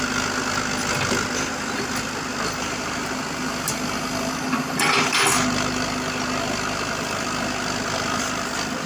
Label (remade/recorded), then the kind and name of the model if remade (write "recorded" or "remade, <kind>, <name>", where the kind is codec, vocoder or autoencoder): recorded